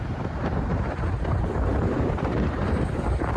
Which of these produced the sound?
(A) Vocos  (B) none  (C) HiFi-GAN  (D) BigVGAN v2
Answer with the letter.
D